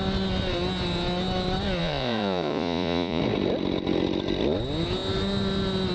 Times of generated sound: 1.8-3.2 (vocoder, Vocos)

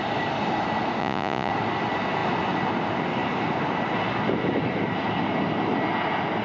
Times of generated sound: 1.0-1.5 (vocoder, Vocos)

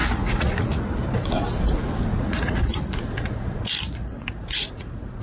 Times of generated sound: 0.0-0.8 (vocoder, Vocos); 2.1-5.2

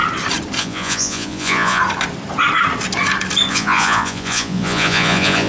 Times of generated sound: 0.6-1.8 (vocoder, Vocos); 3.5-5.5

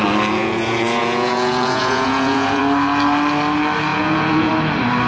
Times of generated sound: 0.4-2.6 (vocoder, Vocos); 3.9-4.5

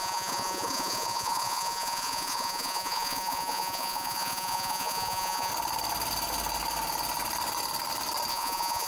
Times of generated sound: 0.0-5.5 (vocoder, Vocos); 8.3-8.9